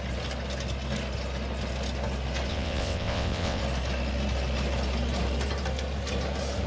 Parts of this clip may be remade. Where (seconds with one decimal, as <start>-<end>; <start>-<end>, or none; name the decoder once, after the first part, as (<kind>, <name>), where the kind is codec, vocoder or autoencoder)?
2.5-3.6 (vocoder, WaveNeXt)